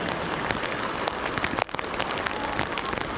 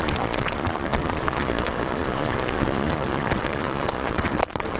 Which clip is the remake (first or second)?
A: second